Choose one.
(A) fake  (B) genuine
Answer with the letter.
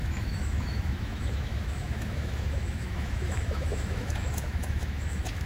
A